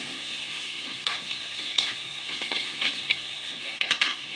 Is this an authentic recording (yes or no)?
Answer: no